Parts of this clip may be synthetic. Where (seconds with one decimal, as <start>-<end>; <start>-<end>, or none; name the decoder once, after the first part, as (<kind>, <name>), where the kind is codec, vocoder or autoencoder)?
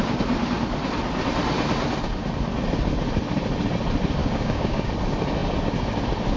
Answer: 4.2-4.9 (codec, DAC)